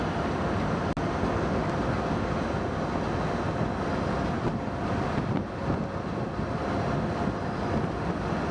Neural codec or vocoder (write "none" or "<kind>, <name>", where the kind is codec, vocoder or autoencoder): none